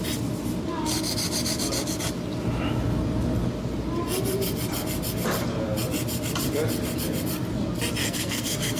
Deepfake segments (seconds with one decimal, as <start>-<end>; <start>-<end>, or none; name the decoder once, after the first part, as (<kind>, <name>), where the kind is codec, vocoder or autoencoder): 8.0-8.8 (codec, SNAC)